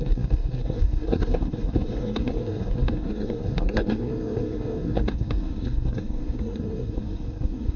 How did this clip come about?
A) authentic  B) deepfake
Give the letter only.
B